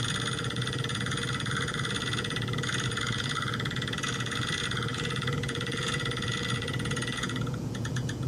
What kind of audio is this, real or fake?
fake